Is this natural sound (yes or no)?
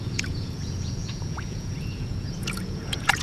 no